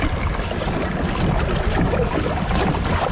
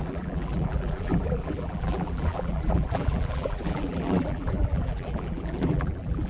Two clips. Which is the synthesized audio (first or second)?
second